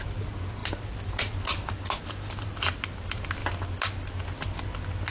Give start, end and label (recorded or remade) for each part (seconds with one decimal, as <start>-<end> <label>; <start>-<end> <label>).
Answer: 0.0-5.1 recorded